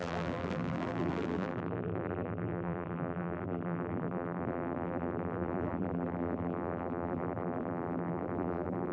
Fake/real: fake